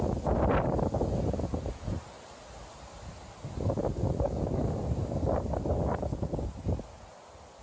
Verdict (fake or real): real